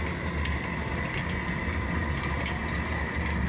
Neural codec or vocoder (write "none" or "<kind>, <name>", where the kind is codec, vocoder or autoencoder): none